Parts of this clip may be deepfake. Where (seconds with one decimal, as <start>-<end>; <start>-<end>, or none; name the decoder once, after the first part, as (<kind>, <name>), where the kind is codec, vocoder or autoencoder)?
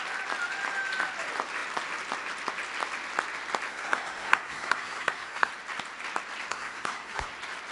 3.7-5.5 (codec, SNAC); 6.5-7.3